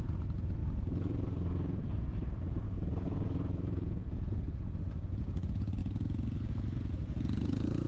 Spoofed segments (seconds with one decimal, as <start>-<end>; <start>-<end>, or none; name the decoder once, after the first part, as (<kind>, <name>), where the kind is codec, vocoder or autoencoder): 0.0-7.9 (vocoder, Vocos)